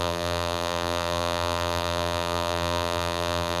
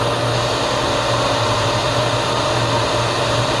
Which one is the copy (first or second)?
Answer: first